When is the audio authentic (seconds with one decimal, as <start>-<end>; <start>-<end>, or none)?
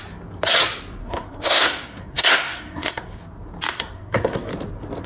0.0-1.0; 3.2-3.7; 4.5-5.1